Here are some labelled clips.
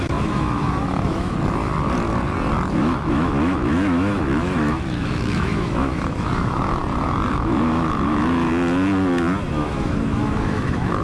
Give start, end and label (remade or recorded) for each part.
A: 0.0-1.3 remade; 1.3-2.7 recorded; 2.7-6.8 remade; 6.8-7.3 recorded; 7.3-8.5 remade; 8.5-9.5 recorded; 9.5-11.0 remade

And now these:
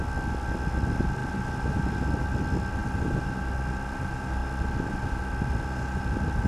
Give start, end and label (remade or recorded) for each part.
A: 0.0-6.5 recorded

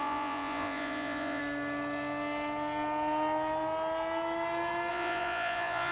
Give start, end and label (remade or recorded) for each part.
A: 0.0-1.4 remade; 1.4-4.9 recorded; 4.9-5.9 remade